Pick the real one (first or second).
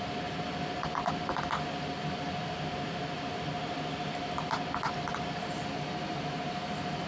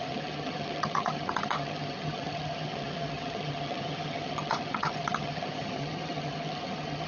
first